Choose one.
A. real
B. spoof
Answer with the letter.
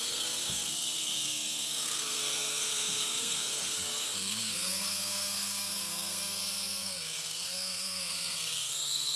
B